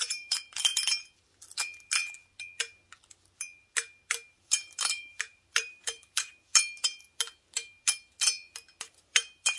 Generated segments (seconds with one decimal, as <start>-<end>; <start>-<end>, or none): 0.0-0.7; 4.3-6.5; 8.8-9.6